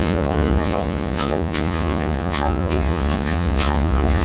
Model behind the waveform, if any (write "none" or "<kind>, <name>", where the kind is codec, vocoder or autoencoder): vocoder, Vocos